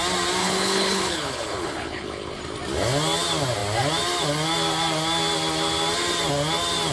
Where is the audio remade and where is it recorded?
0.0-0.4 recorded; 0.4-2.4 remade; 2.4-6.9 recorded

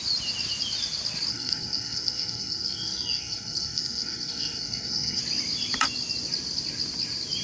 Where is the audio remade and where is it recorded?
0.0-1.3 recorded; 1.3-5.2 remade; 5.2-7.4 recorded

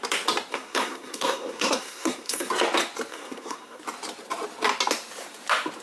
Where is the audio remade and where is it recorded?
0.0-0.5 recorded; 0.5-2.5 remade; 2.5-3.1 recorded; 3.1-3.8 remade; 3.8-5.8 recorded

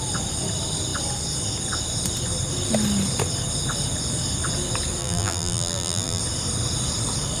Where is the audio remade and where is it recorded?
0.0-5.0 recorded; 5.0-6.2 remade; 6.2-7.4 recorded

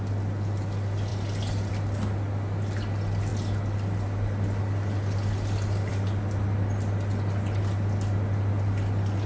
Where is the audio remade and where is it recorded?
0.0-9.3 recorded